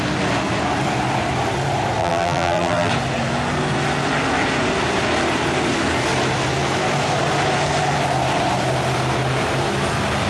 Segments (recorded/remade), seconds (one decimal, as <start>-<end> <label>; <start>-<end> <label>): 0.0-2.0 recorded; 2.0-2.9 remade; 2.9-10.3 recorded